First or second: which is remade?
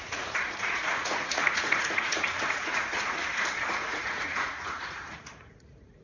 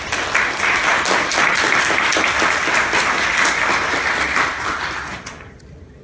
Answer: first